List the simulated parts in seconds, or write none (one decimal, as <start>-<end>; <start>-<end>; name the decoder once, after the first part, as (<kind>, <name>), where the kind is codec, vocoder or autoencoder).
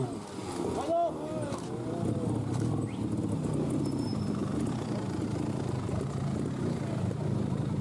none